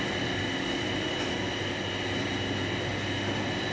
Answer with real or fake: real